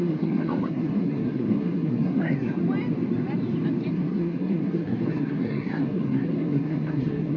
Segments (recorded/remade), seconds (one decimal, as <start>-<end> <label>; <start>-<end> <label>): 0.0-2.6 remade; 2.6-3.9 recorded; 3.9-7.4 remade